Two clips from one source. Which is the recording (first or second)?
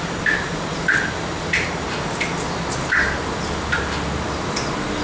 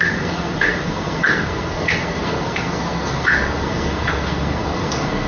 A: first